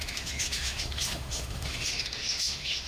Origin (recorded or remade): remade